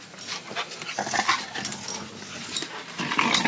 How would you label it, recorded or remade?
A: recorded